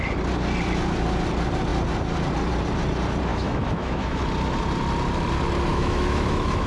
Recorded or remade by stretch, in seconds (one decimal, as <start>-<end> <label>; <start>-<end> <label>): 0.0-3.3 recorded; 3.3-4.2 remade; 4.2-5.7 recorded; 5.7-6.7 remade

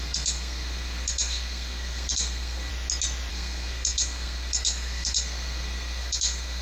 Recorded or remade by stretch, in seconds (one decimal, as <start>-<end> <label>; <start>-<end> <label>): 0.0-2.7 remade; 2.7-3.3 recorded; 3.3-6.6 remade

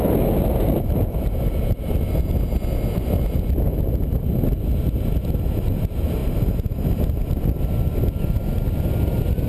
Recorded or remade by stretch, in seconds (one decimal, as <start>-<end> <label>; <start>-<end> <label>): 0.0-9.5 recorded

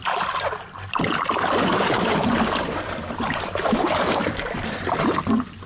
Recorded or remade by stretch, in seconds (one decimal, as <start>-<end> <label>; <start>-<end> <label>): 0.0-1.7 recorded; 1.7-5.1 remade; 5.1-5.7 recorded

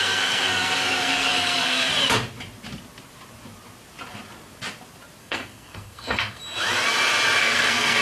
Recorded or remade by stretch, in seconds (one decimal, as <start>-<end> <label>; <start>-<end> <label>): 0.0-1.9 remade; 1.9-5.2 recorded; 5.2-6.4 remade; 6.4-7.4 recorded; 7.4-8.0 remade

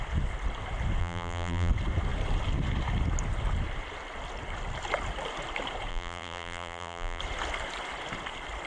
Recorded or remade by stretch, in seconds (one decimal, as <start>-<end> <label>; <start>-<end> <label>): 0.0-1.0 recorded; 1.0-1.7 remade; 1.7-5.9 recorded; 5.9-7.2 remade; 7.2-8.7 recorded

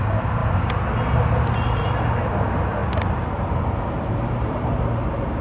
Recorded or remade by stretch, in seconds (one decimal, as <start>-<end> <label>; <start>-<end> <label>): 0.0-2.8 recorded; 2.8-4.8 remade; 4.8-5.4 recorded